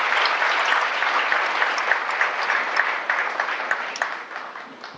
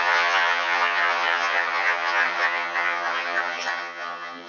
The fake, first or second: second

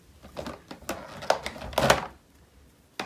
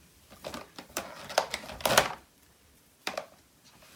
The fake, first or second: second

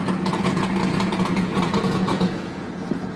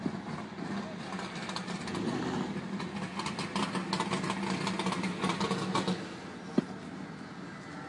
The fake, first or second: first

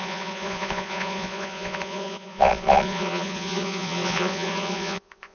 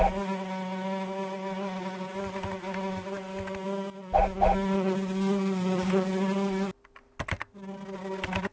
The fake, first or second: first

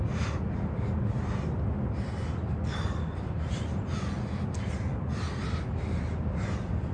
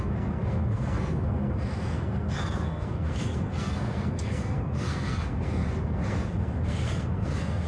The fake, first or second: second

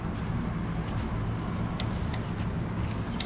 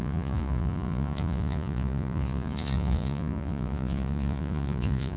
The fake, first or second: second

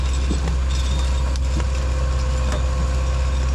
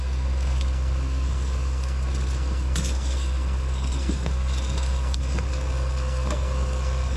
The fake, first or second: second